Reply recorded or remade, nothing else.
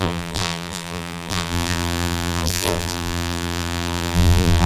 remade